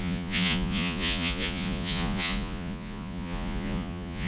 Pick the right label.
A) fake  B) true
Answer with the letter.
A